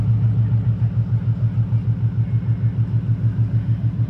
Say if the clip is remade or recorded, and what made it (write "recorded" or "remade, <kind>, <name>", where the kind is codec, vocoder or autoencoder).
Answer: recorded